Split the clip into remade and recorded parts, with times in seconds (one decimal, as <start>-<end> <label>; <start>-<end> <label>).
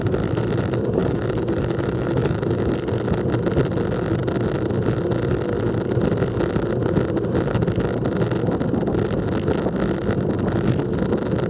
0.0-1.0 recorded; 1.0-2.7 remade; 2.7-11.5 recorded